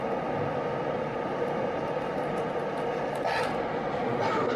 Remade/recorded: recorded